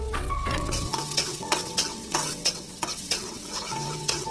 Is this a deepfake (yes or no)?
yes